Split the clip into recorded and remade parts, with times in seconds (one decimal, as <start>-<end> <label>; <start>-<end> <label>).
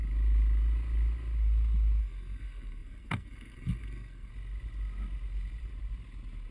0.0-2.0 recorded; 2.0-4.3 remade; 4.3-6.5 recorded